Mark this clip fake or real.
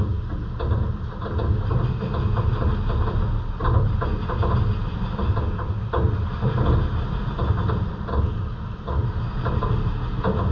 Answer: real